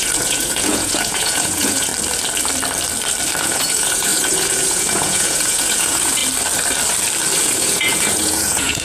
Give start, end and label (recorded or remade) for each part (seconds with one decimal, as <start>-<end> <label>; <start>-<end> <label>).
0.0-1.9 remade; 1.9-3.4 recorded; 3.4-6.2 remade; 6.2-7.4 recorded; 7.4-8.8 remade